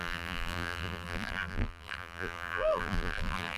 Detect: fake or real fake